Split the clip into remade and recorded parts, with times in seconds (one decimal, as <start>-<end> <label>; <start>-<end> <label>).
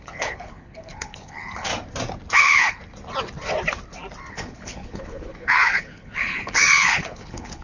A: 0.0-1.7 remade; 1.7-2.4 recorded; 2.4-2.8 remade; 2.8-4.3 recorded; 4.3-7.6 remade